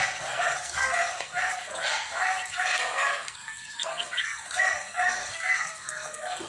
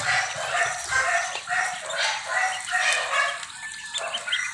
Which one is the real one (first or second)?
second